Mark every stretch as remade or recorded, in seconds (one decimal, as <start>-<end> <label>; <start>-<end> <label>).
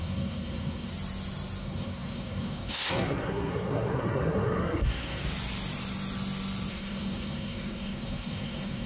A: 0.0-0.9 remade; 0.9-1.6 recorded; 1.6-5.2 remade; 5.2-6.7 recorded; 6.7-8.9 remade